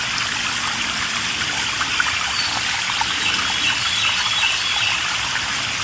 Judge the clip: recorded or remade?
recorded